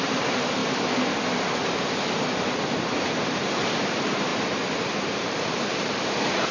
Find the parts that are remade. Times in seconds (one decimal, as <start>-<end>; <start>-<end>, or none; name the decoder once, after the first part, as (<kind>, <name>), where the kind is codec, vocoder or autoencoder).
0.0-0.6 (vocoder, BigVGAN v2); 2.6-4.3; 5.0-6.5

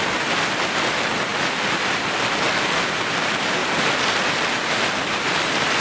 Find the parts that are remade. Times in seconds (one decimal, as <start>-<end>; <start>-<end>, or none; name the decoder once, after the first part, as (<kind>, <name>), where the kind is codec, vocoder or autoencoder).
1.3-1.8 (vocoder, BigVGAN v2); 3.6-5.8